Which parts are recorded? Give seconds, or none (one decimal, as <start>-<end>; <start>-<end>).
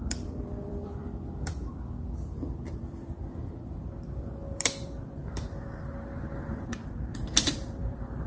1.6-2.7